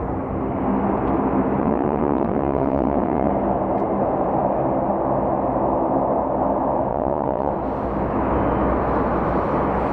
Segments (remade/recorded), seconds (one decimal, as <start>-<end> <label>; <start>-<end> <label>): 0.0-1.6 recorded; 1.6-3.3 remade; 3.3-6.9 recorded; 6.9-7.5 remade; 7.5-9.9 recorded